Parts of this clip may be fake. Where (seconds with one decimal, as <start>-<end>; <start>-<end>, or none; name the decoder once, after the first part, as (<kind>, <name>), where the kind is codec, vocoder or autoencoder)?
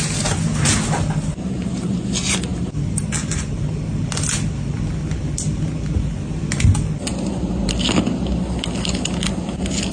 none